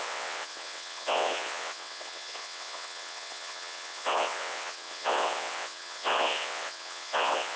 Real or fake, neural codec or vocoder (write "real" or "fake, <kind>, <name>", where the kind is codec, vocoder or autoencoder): fake, vocoder, WaveNeXt